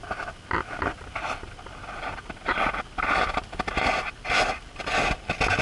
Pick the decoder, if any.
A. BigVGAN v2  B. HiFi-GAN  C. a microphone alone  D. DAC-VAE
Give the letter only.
C